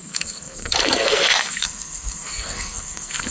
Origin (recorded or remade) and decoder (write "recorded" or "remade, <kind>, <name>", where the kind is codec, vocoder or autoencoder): remade, codec, SNAC